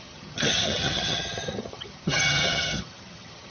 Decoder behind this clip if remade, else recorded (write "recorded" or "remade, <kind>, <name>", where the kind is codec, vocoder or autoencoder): remade, vocoder, HiFi-GAN